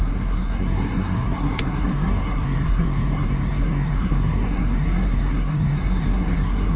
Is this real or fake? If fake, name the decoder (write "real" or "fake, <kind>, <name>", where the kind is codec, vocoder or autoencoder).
fake, codec, SNAC